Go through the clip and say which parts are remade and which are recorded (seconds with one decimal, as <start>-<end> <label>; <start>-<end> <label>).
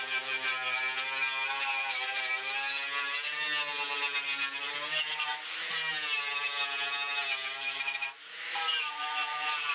0.0-0.5 remade; 0.5-1.6 recorded; 1.6-2.2 remade; 2.2-5.1 recorded; 5.1-5.8 remade; 5.8-7.7 recorded; 7.7-9.7 remade